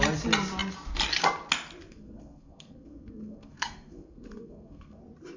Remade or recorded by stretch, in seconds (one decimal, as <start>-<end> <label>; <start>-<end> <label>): 0.0-1.9 recorded; 1.9-5.0 remade; 5.0-5.4 recorded